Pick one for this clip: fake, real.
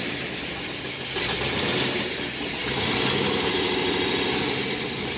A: real